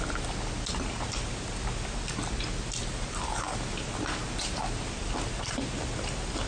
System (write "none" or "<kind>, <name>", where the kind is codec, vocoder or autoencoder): none